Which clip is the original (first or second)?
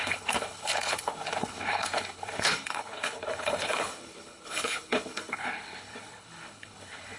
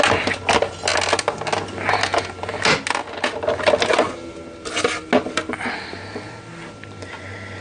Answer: second